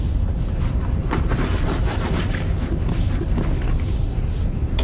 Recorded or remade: remade